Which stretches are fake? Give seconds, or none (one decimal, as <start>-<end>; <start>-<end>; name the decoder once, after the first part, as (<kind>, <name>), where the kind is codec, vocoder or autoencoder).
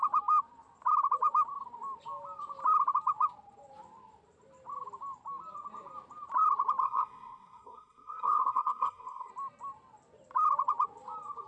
6.8-9.3 (codec, SNAC)